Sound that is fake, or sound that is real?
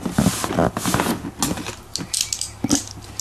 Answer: real